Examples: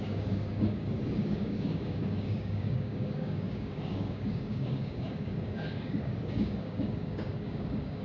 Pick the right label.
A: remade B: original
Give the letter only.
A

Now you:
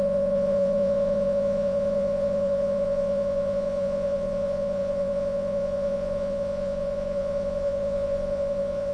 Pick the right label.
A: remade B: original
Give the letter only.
A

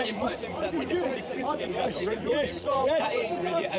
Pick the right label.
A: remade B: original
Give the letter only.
A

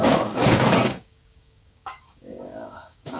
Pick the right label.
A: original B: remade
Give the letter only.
B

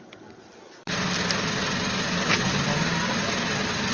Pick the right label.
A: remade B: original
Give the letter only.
B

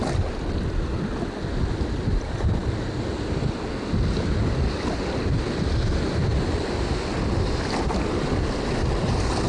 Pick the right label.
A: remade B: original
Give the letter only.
B